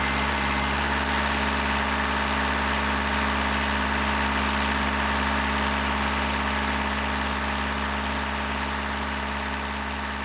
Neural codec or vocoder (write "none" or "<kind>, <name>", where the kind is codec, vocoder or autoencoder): none